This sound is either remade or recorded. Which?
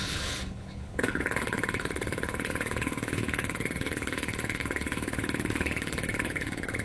remade